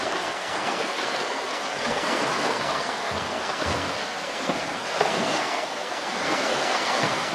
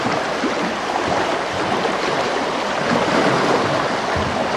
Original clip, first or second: second